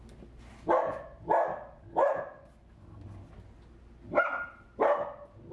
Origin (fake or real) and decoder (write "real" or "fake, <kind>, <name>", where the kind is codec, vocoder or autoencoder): real